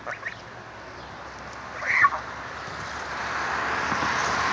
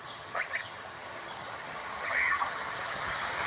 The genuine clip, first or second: first